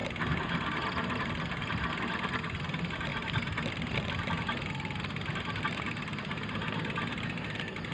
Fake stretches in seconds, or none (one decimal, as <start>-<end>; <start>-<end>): 0.0-1.9; 3.1-5.6